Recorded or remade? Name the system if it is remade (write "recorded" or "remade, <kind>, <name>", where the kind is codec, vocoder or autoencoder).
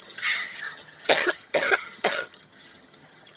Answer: remade, vocoder, HiFi-GAN